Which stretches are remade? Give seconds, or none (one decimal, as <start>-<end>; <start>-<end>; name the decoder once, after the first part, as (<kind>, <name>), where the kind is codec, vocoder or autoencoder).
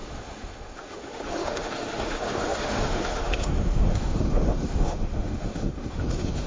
0.0-6.5 (autoencoder, DAC-VAE)